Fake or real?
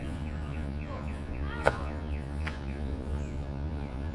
fake